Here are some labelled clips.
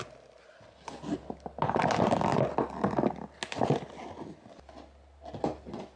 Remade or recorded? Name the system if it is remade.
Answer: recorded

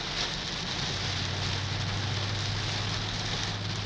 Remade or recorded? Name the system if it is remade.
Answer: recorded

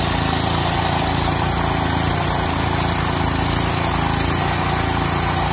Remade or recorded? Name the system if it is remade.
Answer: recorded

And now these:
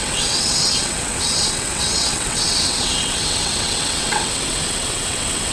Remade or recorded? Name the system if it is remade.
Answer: remade, vocoder, WaveNeXt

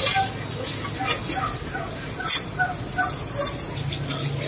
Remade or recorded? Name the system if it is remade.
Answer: recorded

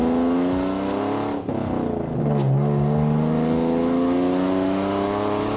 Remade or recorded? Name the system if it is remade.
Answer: recorded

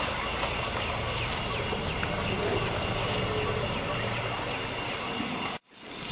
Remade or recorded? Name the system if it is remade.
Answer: recorded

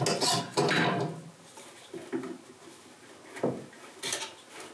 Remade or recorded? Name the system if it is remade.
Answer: recorded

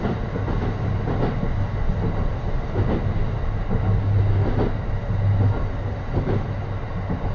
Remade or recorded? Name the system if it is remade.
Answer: recorded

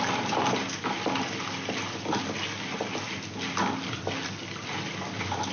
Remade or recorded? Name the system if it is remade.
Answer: recorded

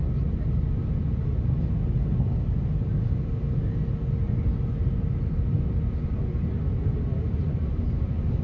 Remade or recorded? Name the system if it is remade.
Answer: recorded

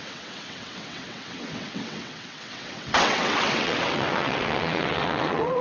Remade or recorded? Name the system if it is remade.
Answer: remade, vocoder, WaveNeXt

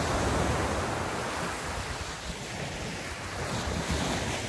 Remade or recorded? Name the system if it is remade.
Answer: recorded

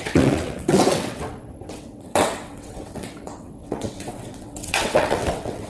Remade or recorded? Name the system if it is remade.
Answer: remade, vocoder, WaveNeXt